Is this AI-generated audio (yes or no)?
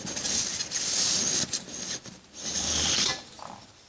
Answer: no